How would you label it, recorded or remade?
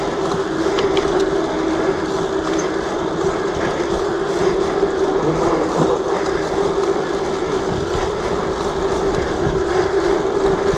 recorded